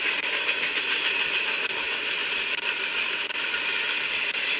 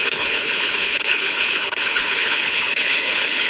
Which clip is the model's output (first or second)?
second